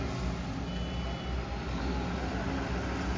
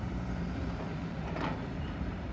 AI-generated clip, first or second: second